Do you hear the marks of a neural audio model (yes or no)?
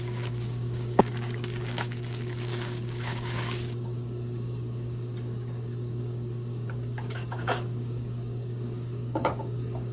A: yes